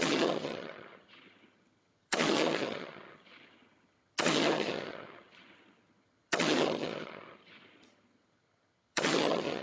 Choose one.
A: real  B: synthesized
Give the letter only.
B